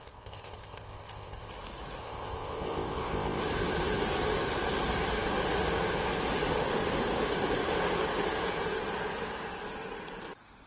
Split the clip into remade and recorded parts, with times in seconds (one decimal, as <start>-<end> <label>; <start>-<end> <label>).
0.0-1.5 remade; 1.5-2.0 recorded; 2.0-3.4 remade; 3.4-10.7 recorded